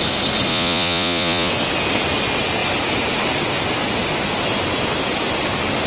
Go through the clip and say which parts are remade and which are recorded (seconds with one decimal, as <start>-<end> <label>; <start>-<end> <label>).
0.0-0.5 recorded; 0.5-1.5 remade; 1.5-5.9 recorded